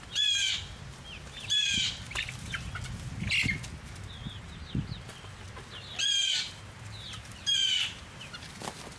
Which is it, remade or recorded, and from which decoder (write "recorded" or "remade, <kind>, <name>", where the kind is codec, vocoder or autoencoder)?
recorded